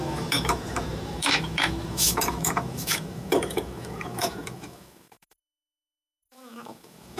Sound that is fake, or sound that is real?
fake